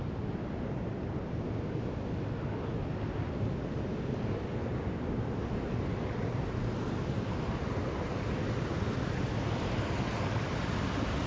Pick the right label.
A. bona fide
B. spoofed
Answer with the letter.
A